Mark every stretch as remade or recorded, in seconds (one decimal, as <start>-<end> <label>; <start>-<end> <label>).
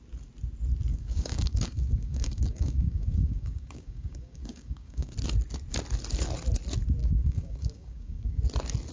0.0-0.9 recorded; 0.9-5.1 remade; 5.1-7.0 recorded; 7.0-8.4 remade; 8.4-8.9 recorded